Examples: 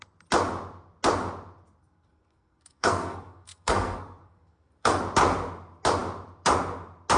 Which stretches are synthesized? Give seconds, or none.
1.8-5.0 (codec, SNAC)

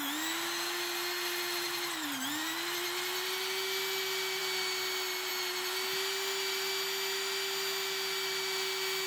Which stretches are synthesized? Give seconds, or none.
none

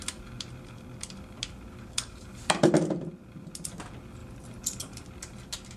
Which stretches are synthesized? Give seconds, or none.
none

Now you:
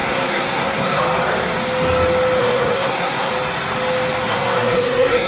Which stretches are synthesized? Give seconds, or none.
0.0-1.0 (codec, SNAC); 2.4-3.3; 4.3-5.3

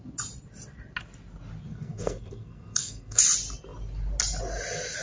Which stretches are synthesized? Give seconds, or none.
1.7-3.2 (codec, SNAC)